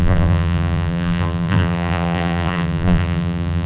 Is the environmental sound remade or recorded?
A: remade